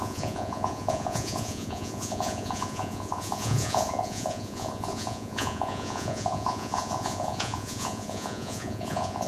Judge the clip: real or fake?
fake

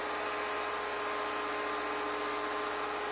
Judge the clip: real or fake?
real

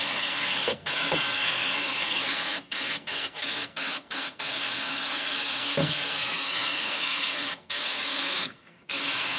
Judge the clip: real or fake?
fake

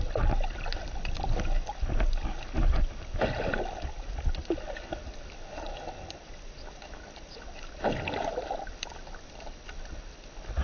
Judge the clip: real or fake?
real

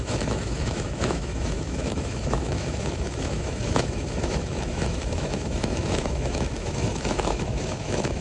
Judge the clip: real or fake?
fake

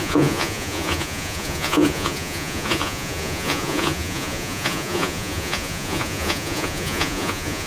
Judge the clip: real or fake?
fake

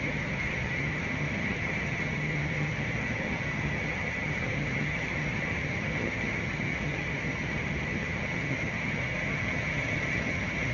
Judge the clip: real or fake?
fake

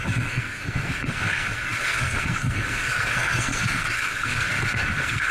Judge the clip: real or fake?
fake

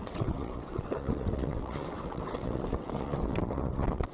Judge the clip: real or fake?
fake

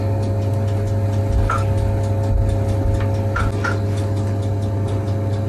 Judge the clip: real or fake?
real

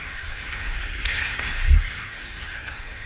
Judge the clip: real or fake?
fake